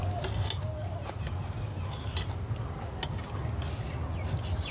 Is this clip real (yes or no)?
yes